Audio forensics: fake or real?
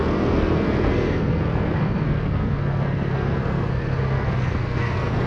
fake